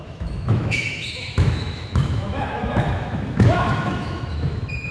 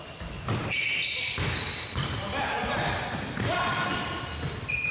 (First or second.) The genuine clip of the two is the second